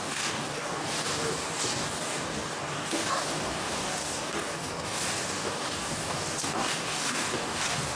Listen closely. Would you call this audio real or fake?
fake